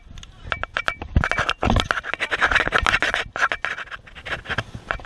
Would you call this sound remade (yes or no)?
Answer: no